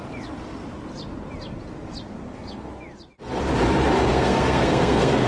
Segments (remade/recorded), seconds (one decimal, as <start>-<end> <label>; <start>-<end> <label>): 0.0-4.1 recorded; 4.1-5.3 remade